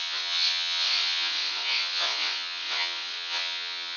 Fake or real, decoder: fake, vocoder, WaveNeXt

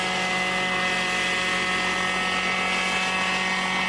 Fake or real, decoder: real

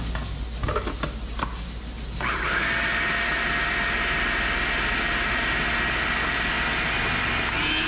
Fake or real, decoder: real